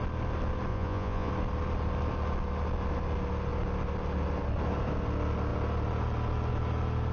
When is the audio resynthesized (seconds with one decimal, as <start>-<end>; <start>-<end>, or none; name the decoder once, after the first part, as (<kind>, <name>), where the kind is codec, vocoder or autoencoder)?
0.7-1.3 (vocoder, Vocos)